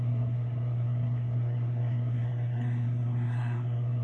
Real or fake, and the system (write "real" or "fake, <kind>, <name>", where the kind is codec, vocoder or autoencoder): fake, codec, SNAC